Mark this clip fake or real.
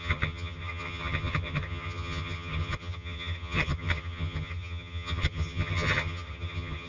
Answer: fake